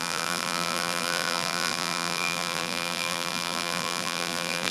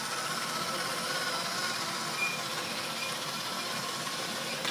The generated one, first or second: first